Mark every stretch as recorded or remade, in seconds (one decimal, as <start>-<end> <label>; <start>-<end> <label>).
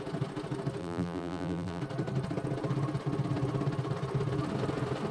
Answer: 0.0-0.8 recorded; 0.8-1.8 remade; 1.8-5.1 recorded